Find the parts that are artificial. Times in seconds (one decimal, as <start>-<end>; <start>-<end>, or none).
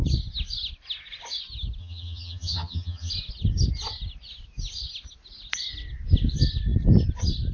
1.8-3.1